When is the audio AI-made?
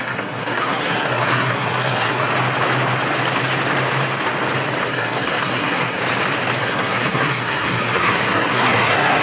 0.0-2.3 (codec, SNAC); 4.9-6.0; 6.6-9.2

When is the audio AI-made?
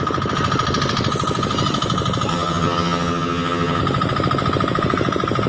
2.3-3.8 (vocoder, HiFi-GAN)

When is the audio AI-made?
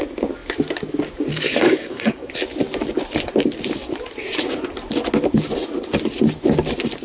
1.3-2.3 (codec, DAC)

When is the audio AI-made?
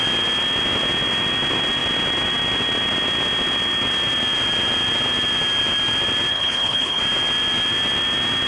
6.3-7.0 (codec, HILCodec)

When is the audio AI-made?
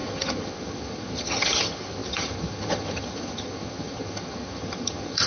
0.0-5.3 (vocoder, HiFi-GAN)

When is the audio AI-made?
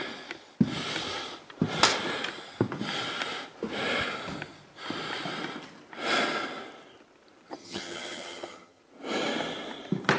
7.6-8.8 (vocoder, HiFi-GAN)